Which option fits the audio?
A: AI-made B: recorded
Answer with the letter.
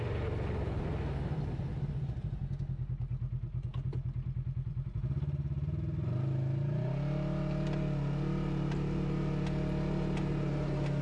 B